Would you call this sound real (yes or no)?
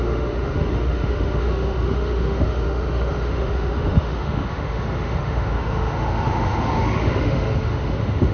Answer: no